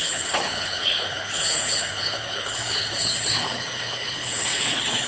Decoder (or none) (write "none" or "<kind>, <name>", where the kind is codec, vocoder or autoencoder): codec, HILCodec